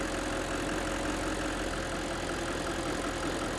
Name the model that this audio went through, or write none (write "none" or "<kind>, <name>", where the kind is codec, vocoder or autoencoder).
none